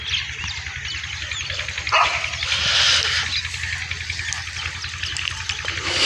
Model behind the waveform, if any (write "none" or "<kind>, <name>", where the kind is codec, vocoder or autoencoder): none